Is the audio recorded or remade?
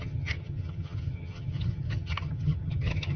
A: remade